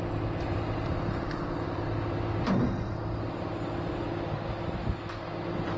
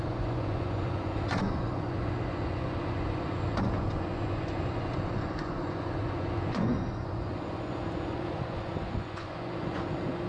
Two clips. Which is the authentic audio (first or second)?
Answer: first